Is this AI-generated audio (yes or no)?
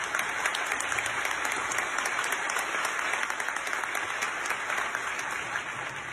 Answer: no